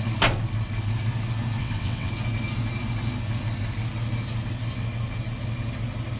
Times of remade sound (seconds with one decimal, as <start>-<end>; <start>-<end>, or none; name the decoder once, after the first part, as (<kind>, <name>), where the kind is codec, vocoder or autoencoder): 1.6-2.1 (vocoder, WaveNeXt)